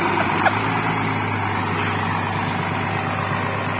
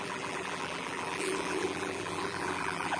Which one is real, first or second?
first